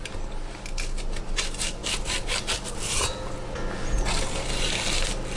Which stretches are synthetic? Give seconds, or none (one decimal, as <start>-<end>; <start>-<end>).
none